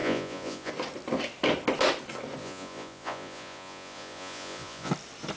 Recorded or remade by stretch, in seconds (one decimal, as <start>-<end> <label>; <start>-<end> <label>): 0.0-0.7 remade; 0.7-2.4 recorded; 2.4-4.9 remade; 4.9-5.4 recorded